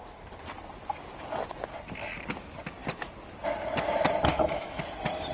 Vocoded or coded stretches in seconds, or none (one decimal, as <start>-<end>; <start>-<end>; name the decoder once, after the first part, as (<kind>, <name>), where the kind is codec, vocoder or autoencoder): 4.3-4.8 (autoencoder, DAC-VAE)